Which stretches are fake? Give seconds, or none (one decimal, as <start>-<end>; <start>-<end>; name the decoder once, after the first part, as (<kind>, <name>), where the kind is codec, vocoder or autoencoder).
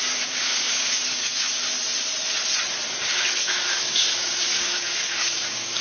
0.0-1.5 (codec, DAC); 3.4-5.8